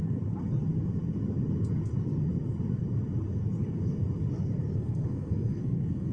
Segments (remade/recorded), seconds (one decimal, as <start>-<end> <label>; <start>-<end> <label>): 0.0-4.7 recorded; 4.7-6.1 remade